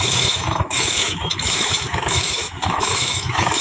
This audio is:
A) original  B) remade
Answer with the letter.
B